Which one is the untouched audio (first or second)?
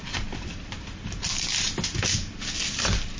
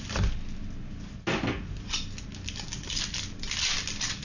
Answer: second